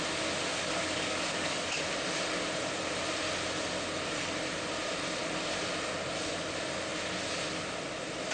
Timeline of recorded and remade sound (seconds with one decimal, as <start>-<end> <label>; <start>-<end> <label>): 0.0-0.5 recorded; 0.5-1.8 remade; 1.8-8.3 recorded